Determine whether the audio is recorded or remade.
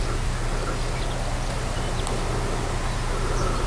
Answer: recorded